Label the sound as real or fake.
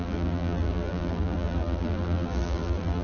fake